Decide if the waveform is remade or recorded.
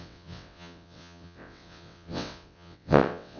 remade